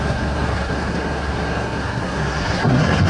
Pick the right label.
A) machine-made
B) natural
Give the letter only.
A